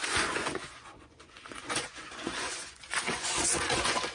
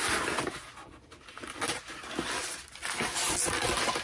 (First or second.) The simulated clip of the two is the first